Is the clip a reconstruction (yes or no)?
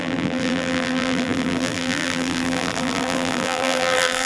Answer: yes